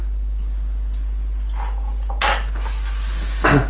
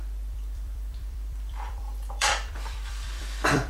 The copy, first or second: second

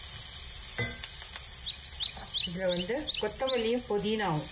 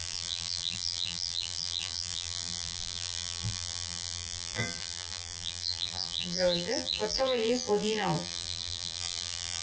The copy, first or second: second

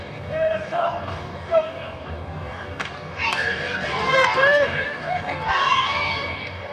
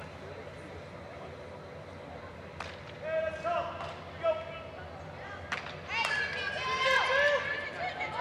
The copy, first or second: first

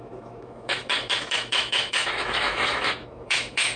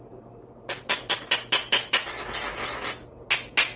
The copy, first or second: first